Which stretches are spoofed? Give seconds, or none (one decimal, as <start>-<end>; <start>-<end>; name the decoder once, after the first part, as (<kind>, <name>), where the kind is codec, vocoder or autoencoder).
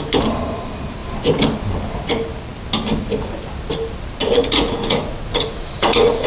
4.4-6.3 (vocoder, Vocos)